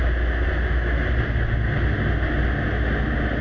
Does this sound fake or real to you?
real